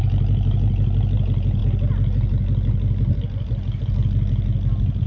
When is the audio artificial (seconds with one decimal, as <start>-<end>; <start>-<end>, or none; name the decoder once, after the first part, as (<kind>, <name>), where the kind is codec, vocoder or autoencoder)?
none